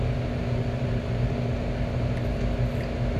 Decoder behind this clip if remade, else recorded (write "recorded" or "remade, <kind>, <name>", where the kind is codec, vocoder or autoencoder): recorded